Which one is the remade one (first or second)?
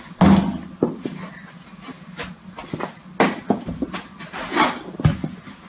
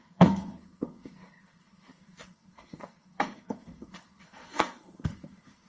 second